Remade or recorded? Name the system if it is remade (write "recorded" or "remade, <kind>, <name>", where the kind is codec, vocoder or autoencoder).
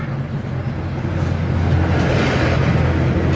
recorded